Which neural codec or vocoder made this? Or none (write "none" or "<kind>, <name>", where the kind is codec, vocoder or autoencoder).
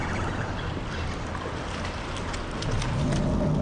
none